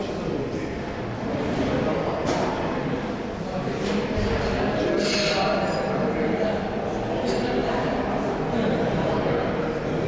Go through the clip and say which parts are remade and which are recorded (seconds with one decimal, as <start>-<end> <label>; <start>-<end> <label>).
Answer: 0.0-10.1 recorded